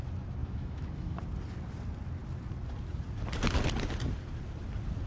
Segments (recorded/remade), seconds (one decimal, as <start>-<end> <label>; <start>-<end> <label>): 0.0-0.4 recorded; 0.4-1.2 remade; 1.2-5.1 recorded